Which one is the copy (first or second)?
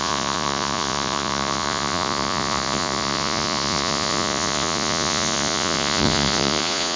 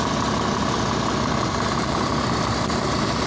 first